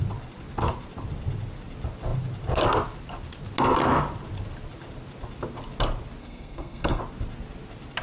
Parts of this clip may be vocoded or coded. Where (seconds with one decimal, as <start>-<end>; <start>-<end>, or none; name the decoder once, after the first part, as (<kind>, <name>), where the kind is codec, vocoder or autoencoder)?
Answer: 6.2-7.0 (codec, SNAC)